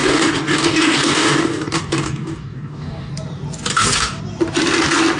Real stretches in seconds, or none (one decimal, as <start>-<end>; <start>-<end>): 3.1-3.7; 4.2-5.2